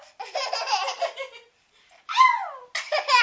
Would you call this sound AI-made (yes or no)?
no